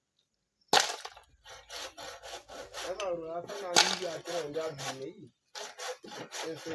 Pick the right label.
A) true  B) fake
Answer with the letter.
A